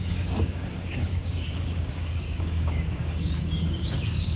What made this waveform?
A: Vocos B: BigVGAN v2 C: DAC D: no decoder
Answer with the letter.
C